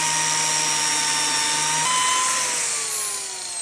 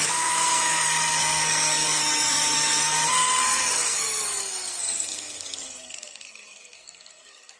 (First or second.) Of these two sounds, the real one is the first